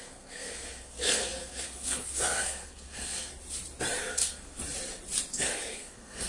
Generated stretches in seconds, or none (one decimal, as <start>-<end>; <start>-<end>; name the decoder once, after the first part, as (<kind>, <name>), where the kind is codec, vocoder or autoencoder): 0.0-3.3 (codec, SNAC); 4.0-4.6; 5.3-6.3